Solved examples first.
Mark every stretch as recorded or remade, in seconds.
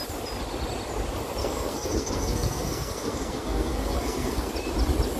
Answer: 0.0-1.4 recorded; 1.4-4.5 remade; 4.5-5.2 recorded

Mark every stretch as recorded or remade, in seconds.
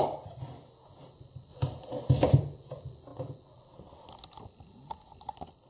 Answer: 0.0-5.7 recorded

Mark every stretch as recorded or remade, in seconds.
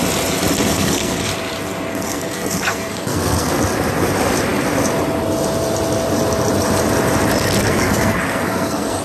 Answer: 0.0-0.7 recorded; 0.7-1.3 remade; 1.3-1.9 recorded; 1.9-3.5 remade; 3.5-7.6 recorded; 7.6-9.0 remade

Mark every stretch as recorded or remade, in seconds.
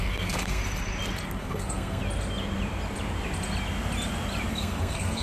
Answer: 0.0-0.6 remade; 0.6-1.4 recorded; 1.4-2.0 remade; 2.0-4.5 recorded; 4.5-5.2 remade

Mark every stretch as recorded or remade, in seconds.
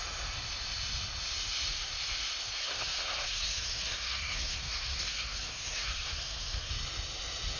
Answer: 0.0-2.6 recorded; 2.6-6.7 remade; 6.7-7.6 recorded